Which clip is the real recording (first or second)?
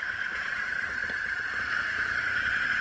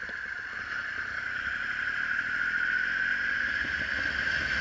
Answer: second